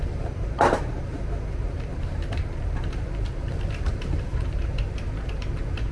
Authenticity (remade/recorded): remade